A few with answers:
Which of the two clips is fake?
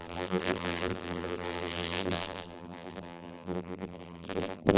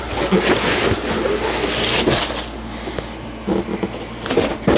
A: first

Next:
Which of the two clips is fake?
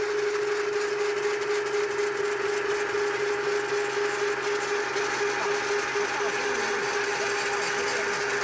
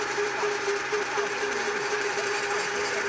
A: second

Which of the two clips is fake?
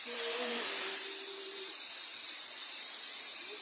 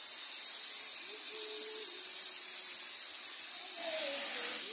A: first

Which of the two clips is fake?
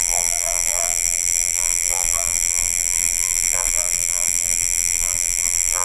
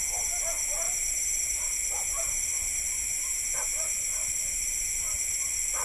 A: first